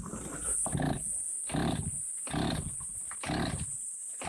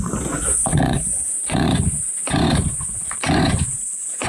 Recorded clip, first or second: first